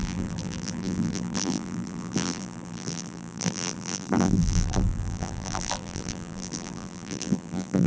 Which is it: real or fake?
fake